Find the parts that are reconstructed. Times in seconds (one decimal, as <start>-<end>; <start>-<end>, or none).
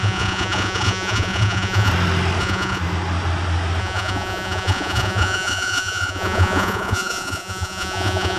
0.0-1.9; 2.4-2.8; 3.8-8.4